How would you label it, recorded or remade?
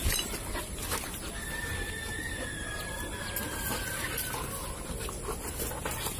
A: recorded